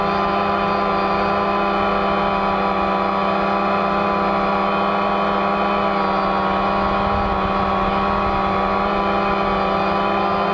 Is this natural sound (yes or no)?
yes